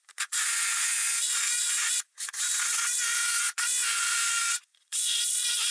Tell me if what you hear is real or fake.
fake